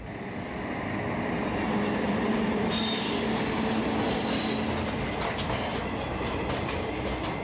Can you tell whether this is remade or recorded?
recorded